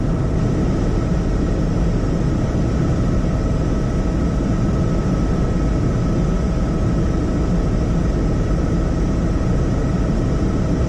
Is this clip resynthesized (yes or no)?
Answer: no